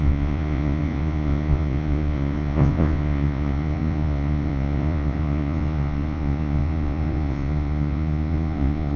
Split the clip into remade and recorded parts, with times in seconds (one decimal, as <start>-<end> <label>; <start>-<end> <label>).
0.0-9.0 remade